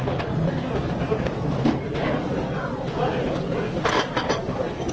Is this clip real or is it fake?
real